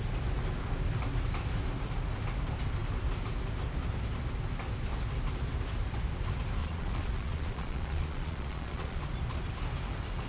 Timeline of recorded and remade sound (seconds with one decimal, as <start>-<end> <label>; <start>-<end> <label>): 0.0-6.6 recorded; 6.6-9.0 remade; 9.0-10.3 recorded